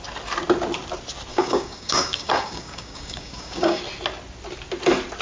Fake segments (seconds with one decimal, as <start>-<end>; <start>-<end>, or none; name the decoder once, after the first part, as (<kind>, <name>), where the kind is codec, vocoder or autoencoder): 1.3-3.8 (codec, DAC)